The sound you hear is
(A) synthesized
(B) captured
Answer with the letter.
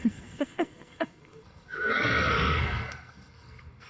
A